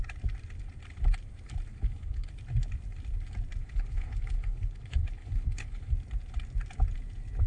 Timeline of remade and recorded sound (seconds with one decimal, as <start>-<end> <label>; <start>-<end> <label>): 0.0-1.7 recorded; 1.7-2.3 remade; 2.3-3.6 recorded; 3.6-5.9 remade; 5.9-7.5 recorded